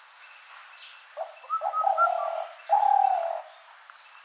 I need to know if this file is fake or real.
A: real